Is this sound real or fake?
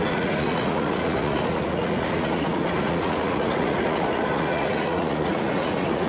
fake